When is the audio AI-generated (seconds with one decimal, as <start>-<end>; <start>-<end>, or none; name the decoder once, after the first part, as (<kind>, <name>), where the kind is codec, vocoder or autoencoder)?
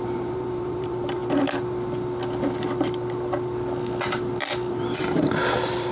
0.0-1.2 (vocoder, BigVGAN v2); 4.7-5.9